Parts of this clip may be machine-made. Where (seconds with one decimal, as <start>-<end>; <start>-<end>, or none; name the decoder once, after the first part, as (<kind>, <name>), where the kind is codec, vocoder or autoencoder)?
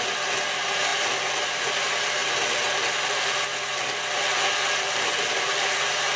none